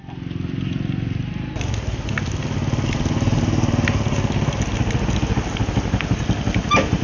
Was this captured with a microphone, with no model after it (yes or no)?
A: yes